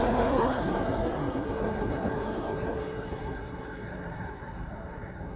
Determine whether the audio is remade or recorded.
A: remade